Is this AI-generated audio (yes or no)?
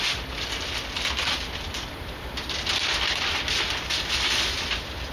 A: yes